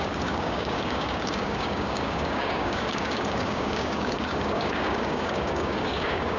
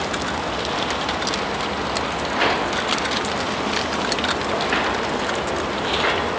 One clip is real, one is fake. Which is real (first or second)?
second